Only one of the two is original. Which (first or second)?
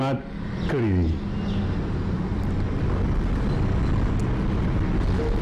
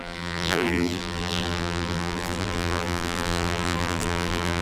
first